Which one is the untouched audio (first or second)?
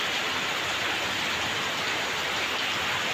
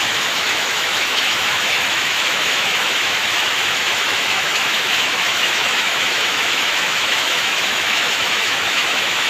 first